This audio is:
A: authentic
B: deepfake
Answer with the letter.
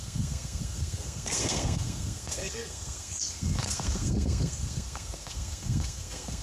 B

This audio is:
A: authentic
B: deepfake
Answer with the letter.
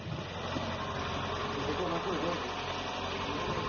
A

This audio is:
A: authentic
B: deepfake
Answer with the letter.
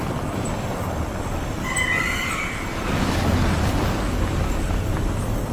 A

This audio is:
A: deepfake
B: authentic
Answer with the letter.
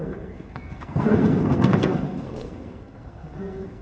A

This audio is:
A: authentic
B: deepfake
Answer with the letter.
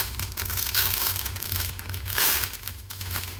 B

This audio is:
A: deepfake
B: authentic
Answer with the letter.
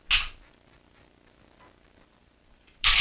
B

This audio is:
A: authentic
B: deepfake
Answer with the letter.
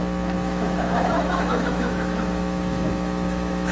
B